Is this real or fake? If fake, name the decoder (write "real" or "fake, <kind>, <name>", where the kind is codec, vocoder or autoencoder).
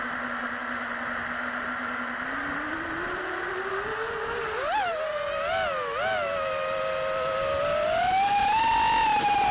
real